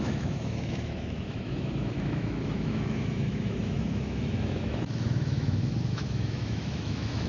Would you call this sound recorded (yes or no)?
no